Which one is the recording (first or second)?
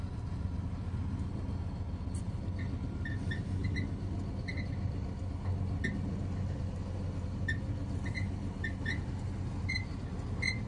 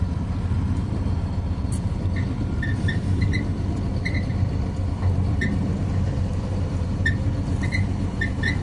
first